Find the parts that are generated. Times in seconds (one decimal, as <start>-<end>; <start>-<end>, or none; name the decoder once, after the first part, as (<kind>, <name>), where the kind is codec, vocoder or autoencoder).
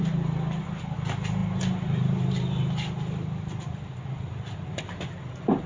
none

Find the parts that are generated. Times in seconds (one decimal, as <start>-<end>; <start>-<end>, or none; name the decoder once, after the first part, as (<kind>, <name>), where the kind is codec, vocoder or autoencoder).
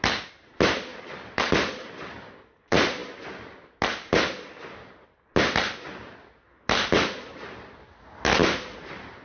none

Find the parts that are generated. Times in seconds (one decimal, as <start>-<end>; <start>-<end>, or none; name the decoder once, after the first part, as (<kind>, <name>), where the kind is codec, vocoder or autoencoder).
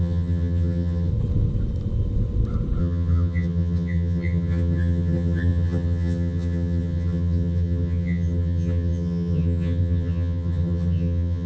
0.0-1.1 (vocoder, HiFi-GAN); 2.8-11.5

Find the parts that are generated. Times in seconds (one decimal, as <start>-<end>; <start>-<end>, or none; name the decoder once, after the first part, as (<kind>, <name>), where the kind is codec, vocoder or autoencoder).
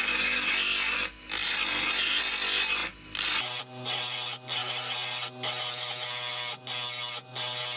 none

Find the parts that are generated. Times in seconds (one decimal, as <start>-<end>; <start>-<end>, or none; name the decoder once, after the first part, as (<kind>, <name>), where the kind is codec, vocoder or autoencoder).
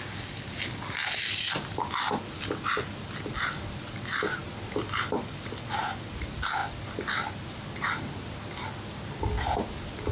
none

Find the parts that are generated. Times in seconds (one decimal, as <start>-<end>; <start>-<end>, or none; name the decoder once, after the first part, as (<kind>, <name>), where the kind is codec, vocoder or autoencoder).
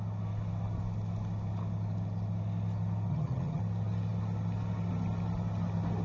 3.1-3.6 (vocoder, HiFi-GAN)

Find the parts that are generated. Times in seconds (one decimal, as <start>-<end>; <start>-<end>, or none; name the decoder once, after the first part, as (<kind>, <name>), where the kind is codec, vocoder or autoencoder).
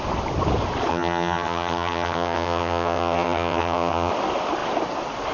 0.9-4.1 (vocoder, HiFi-GAN)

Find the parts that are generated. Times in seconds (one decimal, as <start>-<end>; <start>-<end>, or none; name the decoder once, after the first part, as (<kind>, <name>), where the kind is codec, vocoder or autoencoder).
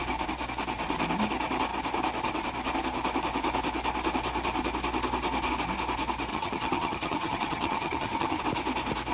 6.3-8.4 (vocoder, HiFi-GAN)